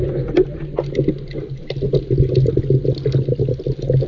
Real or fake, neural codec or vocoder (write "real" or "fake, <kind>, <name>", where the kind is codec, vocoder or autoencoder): real